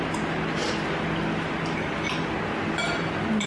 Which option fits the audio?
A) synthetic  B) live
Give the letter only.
B